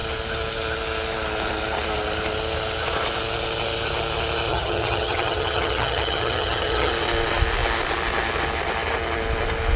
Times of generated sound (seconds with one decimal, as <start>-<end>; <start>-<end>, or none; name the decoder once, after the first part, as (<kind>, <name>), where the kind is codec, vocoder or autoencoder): 4.5-6.9 (vocoder, HiFi-GAN)